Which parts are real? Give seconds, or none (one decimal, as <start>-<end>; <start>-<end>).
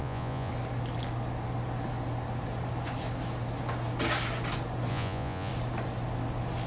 0.5-4.9; 5.5-6.7